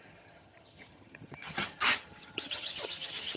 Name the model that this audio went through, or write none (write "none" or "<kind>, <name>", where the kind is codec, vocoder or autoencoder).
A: vocoder, HiFi-GAN